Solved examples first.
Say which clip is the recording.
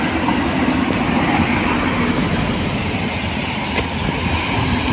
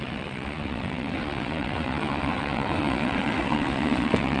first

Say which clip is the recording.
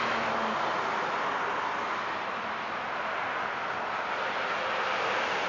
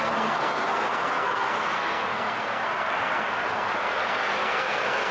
first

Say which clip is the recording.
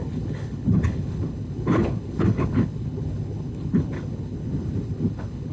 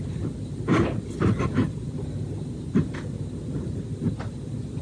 second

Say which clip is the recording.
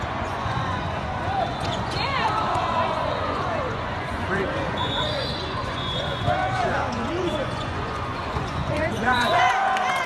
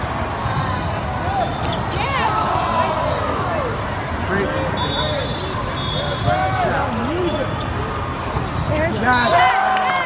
second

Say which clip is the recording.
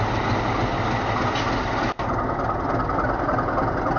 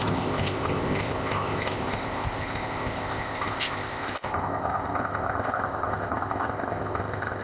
first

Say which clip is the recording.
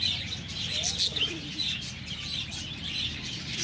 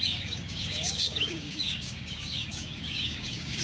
first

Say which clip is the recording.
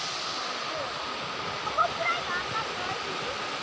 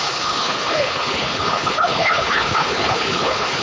first